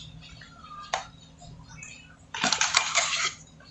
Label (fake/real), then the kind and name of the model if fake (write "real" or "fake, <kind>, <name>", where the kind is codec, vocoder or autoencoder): real